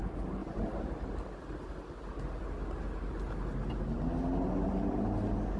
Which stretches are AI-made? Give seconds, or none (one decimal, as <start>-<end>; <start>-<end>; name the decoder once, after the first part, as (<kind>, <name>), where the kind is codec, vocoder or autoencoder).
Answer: none